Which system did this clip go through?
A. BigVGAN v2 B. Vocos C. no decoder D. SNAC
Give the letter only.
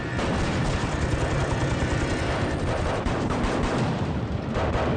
C